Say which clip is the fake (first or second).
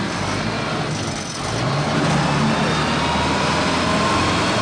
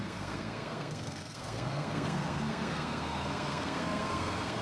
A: second